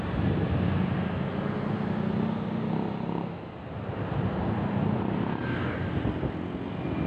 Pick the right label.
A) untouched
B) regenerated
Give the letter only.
A